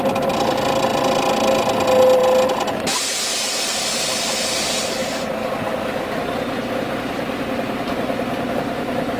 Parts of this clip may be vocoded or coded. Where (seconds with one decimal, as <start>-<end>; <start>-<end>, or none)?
none